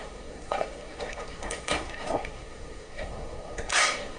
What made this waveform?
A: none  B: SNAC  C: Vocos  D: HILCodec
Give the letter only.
B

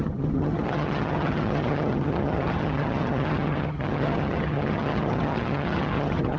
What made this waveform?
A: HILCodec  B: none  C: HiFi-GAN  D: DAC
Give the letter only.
C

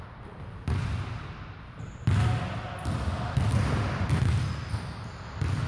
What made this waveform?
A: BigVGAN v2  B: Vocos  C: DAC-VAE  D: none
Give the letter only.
D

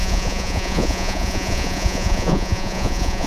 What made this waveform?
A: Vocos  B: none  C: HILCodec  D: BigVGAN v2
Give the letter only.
A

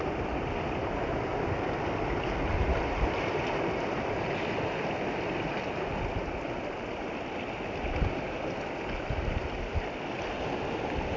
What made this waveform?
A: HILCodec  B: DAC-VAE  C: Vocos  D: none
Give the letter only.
D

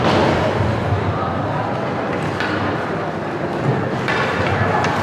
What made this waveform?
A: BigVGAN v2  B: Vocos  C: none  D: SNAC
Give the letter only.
C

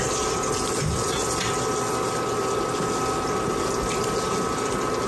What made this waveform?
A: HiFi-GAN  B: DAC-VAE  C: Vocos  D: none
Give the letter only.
D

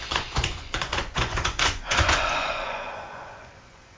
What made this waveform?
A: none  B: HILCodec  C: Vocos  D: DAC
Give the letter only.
C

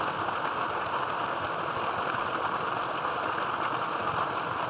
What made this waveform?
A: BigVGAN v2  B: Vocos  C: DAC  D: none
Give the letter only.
D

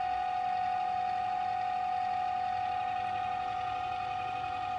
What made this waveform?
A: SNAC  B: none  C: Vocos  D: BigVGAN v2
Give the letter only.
B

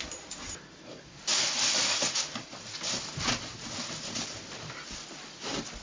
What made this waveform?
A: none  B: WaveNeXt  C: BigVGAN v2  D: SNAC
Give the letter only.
C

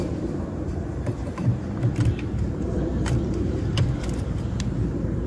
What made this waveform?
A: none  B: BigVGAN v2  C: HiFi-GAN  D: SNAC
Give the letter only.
B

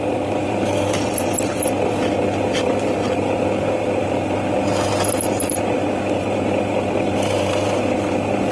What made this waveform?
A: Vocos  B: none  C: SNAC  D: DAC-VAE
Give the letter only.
B